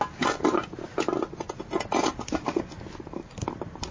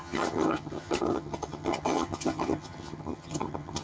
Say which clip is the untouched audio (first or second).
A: first